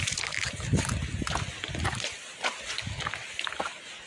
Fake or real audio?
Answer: real